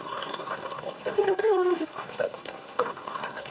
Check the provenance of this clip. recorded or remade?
remade